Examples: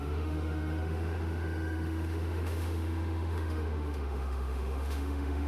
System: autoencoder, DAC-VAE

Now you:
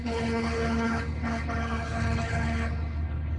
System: codec, HILCodec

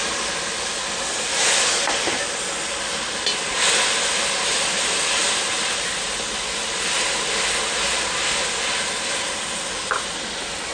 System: none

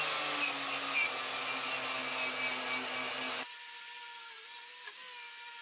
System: none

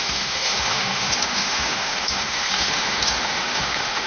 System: autoencoder, DAC-VAE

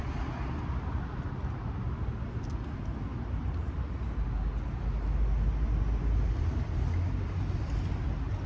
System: none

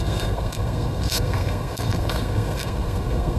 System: codec, SNAC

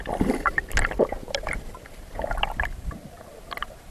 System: none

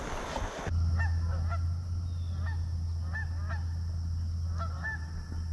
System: none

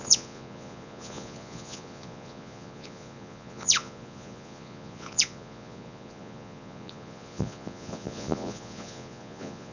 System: vocoder, Vocos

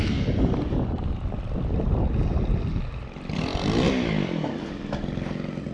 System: none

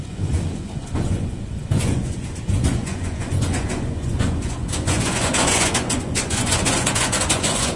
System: vocoder, Vocos